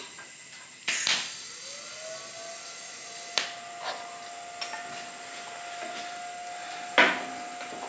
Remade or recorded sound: recorded